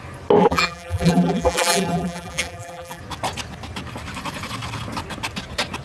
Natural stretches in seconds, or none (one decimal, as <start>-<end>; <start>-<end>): 0.0-0.4; 3.0-5.8